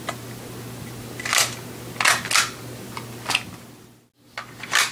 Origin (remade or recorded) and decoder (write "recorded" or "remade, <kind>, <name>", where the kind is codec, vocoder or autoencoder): recorded